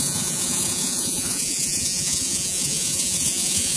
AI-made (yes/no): yes